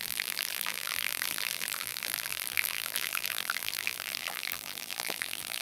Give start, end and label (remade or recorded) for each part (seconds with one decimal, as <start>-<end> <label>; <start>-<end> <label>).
0.0-5.6 remade